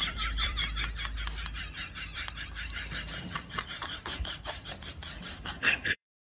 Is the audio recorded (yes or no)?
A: no